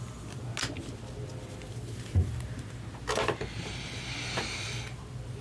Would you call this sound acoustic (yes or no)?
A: yes